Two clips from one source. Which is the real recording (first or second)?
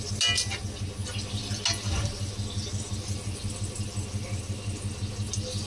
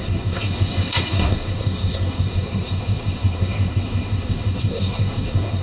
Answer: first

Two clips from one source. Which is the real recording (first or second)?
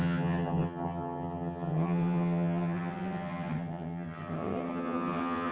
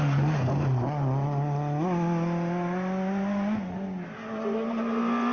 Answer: second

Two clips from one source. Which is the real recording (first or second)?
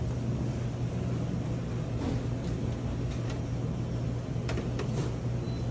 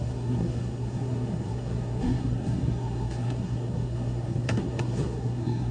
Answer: first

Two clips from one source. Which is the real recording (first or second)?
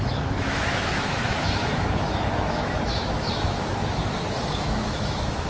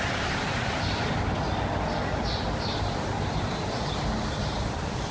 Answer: second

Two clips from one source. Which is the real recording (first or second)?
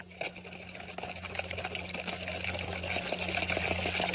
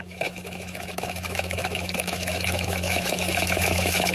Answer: first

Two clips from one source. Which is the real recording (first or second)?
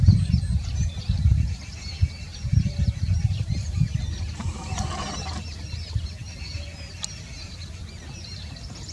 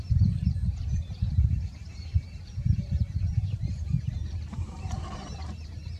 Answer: first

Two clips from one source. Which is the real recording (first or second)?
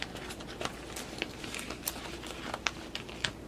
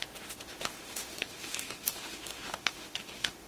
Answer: first